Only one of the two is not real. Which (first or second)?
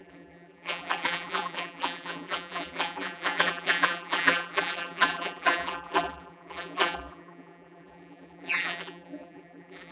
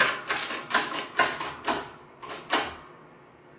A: first